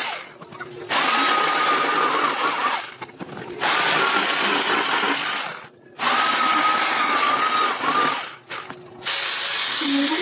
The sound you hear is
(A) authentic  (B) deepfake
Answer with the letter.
A